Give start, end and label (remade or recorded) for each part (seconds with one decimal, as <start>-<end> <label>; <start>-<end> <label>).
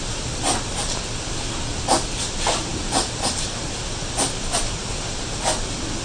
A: 0.0-6.0 recorded